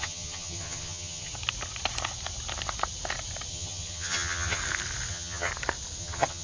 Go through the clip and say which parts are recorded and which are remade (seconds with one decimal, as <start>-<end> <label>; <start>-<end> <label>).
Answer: 0.0-1.3 remade; 1.3-3.5 recorded; 3.5-4.6 remade; 4.6-5.1 recorded; 5.1-5.5 remade; 5.5-6.0 recorded; 6.0-6.4 remade